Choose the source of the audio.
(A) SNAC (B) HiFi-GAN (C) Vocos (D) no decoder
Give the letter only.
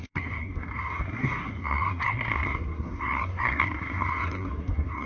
A